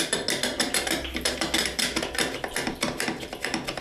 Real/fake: real